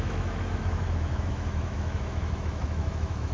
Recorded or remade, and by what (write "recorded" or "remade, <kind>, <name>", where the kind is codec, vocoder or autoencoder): remade, autoencoder, DAC-VAE